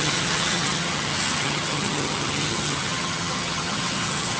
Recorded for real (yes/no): no